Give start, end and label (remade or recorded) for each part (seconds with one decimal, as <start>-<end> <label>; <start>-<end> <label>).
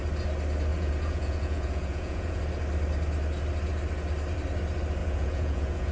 0.0-0.7 recorded; 0.7-2.4 remade; 2.4-5.0 recorded; 5.0-5.9 remade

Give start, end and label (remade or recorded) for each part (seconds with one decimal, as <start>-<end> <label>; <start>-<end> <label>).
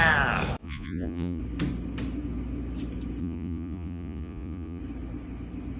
0.0-0.6 recorded; 0.6-1.4 remade; 1.4-3.2 recorded; 3.2-4.8 remade; 4.8-5.8 recorded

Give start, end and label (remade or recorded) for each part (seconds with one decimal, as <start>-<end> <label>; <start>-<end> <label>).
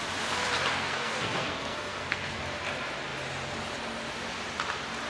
0.0-0.7 recorded; 0.7-2.4 remade; 2.4-5.1 recorded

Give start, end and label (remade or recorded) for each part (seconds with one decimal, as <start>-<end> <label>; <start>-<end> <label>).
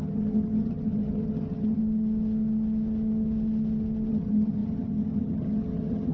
0.0-1.8 remade; 1.8-4.1 recorded; 4.1-6.1 remade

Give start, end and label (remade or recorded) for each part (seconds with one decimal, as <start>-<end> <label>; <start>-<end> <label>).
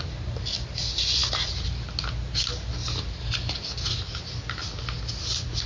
0.0-5.7 recorded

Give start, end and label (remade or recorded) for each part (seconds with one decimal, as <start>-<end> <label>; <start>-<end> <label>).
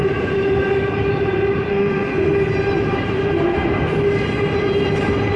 0.0-1.7 recorded; 1.7-2.1 remade; 2.1-5.4 recorded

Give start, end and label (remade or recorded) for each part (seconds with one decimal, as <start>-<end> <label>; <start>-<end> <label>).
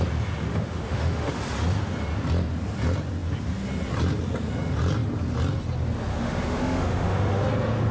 0.0-0.5 recorded; 0.5-1.4 remade; 1.4-6.1 recorded; 6.1-7.5 remade; 7.5-7.9 recorded